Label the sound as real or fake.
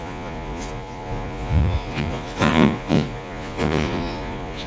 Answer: fake